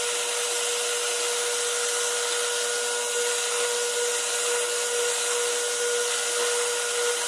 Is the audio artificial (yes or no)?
no